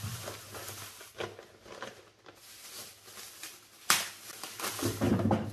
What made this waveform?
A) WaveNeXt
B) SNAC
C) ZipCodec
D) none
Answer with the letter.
D